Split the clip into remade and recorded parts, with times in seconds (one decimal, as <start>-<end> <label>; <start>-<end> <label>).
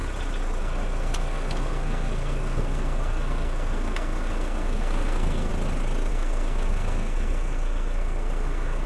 0.0-0.6 recorded; 0.6-5.5 remade; 5.5-6.1 recorded; 6.1-8.9 remade